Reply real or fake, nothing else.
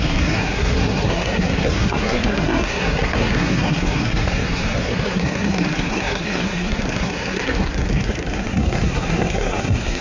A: fake